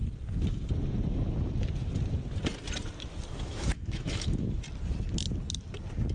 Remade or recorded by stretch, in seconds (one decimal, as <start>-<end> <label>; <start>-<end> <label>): 0.0-3.3 recorded; 3.3-4.6 remade; 4.6-6.1 recorded